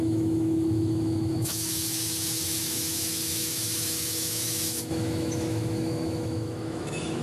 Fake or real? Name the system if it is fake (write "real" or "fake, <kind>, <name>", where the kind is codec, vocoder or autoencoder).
fake, autoencoder, DAC-VAE